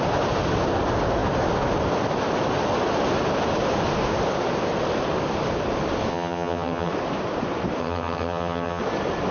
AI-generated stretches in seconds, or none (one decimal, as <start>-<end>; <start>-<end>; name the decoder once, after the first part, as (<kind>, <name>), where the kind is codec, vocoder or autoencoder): 6.1-6.9 (vocoder, HiFi-GAN); 7.8-8.8